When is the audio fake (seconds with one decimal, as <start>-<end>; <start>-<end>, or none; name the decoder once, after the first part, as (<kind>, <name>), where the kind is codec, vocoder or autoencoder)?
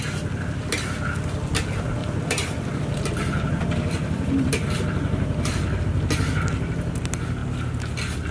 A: 2.0-5.8 (vocoder, BigVGAN v2)